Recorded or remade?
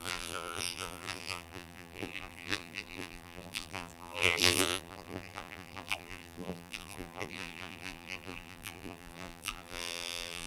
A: remade